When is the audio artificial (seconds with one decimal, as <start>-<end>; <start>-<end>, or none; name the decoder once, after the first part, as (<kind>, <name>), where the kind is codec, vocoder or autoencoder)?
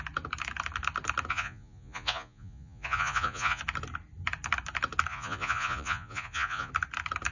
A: 1.3-3.6 (vocoder, Vocos); 5.1-6.7